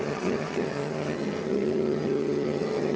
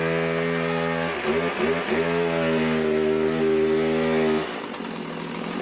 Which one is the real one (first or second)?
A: second